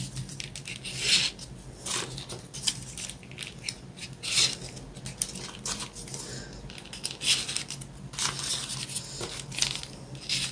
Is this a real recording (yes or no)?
yes